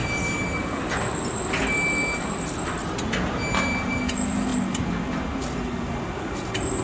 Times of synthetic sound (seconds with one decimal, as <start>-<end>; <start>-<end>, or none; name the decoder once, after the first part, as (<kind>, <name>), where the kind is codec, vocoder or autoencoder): none